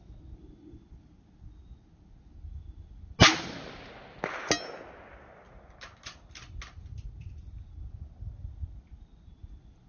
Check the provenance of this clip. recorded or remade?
recorded